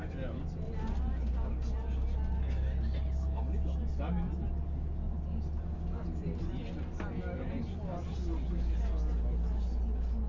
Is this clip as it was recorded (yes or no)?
yes